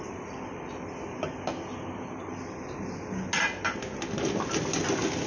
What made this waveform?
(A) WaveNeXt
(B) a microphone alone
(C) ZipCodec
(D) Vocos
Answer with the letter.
B